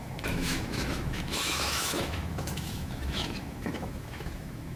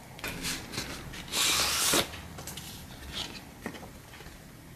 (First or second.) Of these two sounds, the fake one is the first